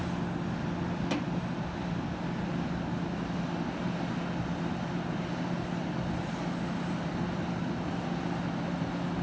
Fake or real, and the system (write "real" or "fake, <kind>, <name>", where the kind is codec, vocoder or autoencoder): real